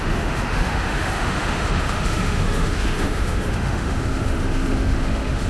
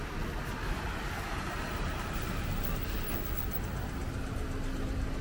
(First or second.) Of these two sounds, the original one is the second